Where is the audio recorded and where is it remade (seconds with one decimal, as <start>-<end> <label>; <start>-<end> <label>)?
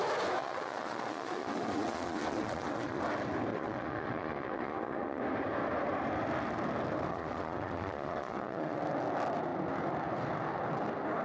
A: 0.0-0.4 recorded; 0.4-3.0 remade; 3.0-3.5 recorded; 3.5-5.2 remade; 5.2-7.1 recorded; 7.1-8.8 remade; 8.8-11.2 recorded